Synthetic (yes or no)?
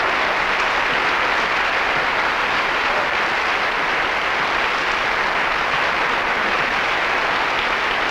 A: no